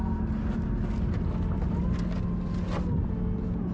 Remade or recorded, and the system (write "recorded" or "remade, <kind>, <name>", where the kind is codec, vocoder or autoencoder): recorded